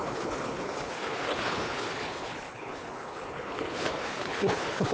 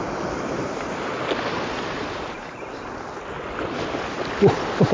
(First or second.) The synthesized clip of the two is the first